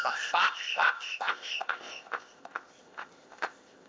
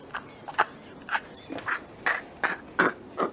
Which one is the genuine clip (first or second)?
second